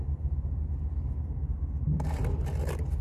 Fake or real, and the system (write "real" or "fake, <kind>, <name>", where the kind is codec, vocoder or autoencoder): real